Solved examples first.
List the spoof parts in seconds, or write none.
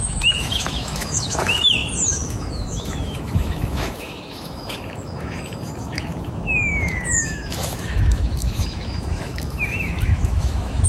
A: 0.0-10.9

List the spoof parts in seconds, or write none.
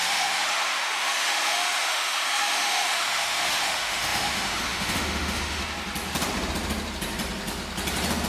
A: 0.0-5.6